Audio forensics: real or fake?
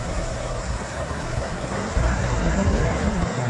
fake